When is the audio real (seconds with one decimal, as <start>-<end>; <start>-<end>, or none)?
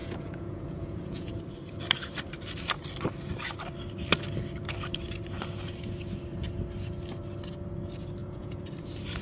1.3-8.2; 8.7-9.2